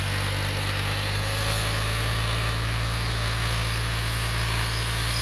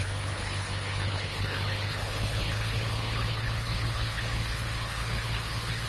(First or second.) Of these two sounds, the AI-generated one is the second